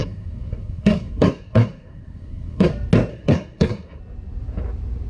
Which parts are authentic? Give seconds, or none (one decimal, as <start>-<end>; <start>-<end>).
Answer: 2.7-3.1; 4.0-5.1